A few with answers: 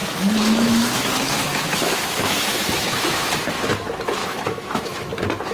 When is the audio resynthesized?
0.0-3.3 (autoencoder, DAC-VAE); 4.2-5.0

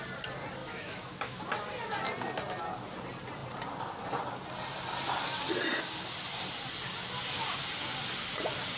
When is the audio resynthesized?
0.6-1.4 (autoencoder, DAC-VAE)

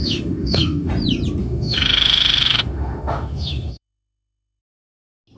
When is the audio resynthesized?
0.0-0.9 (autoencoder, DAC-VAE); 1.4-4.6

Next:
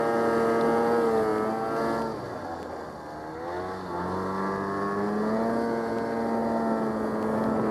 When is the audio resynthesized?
none

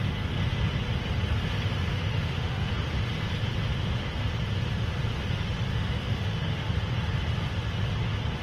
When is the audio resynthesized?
1.9-2.7 (autoencoder, DAC-VAE); 5.7-6.7

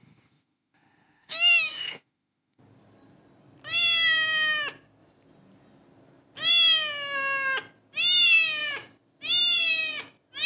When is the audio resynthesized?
0.0-2.6 (autoencoder, DAC-VAE)

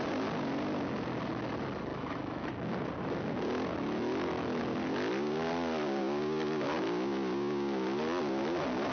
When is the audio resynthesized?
1.9-2.5 (autoencoder, DAC-VAE); 3.7-4.6

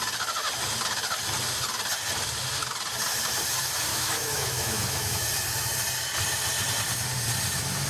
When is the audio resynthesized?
3.9-5.2 (autoencoder, DAC-VAE)